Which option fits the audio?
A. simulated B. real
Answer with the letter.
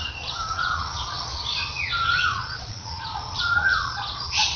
A